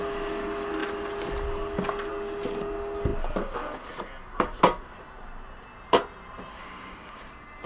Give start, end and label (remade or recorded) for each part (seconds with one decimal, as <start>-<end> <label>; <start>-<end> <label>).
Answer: 0.0-6.5 recorded; 6.5-7.3 remade; 7.3-7.7 recorded